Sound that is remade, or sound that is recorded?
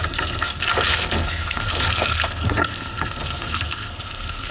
remade